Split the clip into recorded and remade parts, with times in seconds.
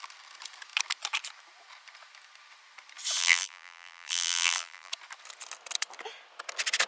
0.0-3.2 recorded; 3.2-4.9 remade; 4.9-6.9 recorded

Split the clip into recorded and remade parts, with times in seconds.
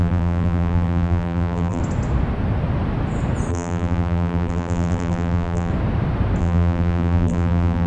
0.0-1.8 remade; 1.8-3.5 recorded; 3.5-5.7 remade; 5.7-6.4 recorded; 6.4-7.9 remade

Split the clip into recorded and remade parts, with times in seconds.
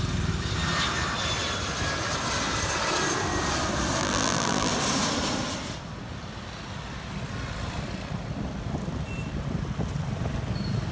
0.0-4.0 recorded; 4.0-4.7 remade; 4.7-10.9 recorded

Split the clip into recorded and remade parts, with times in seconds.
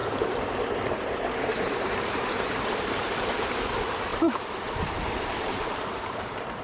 0.0-3.5 remade; 3.5-4.1 recorded; 4.1-6.6 remade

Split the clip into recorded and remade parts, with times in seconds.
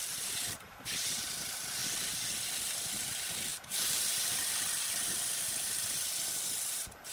0.0-1.8 remade; 1.8-2.6 recorded; 2.6-7.1 remade